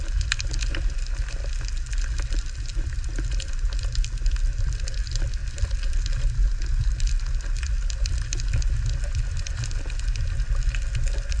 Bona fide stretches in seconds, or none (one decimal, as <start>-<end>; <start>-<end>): 0.0-11.4